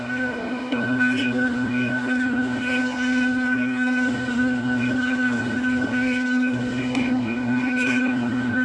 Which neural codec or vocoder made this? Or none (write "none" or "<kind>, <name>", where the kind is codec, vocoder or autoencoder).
codec, SNAC